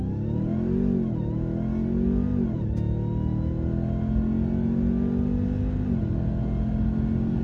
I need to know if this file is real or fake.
real